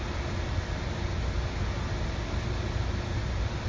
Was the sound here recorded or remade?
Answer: recorded